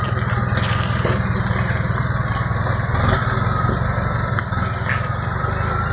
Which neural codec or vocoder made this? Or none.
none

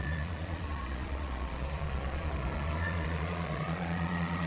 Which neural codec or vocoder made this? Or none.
vocoder, Vocos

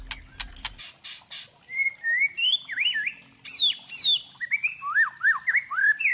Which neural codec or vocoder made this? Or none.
none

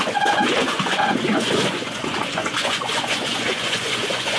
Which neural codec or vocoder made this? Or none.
vocoder, Vocos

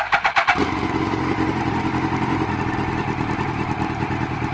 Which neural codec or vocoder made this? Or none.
none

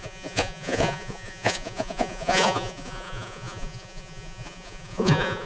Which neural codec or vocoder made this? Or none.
vocoder, Vocos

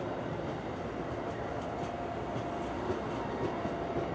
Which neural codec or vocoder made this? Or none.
none